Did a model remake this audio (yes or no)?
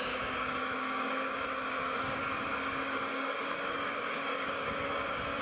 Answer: yes